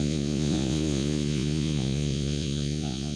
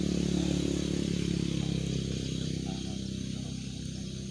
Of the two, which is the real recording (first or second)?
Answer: second